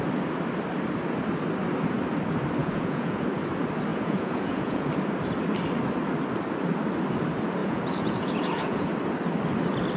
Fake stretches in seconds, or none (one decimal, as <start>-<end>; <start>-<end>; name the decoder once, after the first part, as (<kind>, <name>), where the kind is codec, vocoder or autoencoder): 2.6-3.2 (vocoder, Vocos); 3.9-4.9; 7.6-8.9